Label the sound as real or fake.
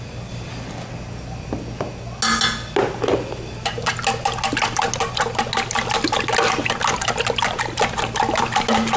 real